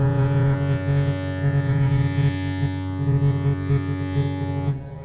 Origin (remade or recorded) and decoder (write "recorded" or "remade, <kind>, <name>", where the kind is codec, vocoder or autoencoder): remade, vocoder, Vocos